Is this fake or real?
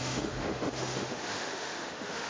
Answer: fake